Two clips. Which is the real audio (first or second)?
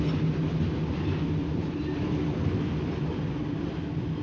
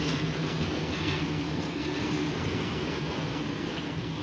first